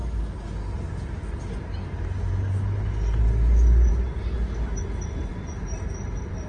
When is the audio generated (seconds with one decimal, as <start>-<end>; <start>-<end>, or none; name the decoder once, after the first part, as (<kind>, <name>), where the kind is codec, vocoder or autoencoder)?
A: none